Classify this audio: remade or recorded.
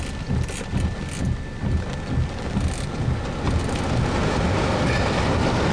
recorded